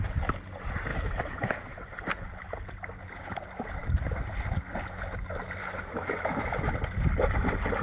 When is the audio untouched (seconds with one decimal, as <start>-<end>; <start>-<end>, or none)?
0.0-0.9; 1.5-5.6; 6.7-7.8